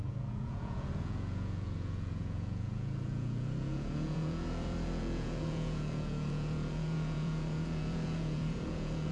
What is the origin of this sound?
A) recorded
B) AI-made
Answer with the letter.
B